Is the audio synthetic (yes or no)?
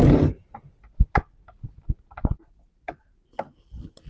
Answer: no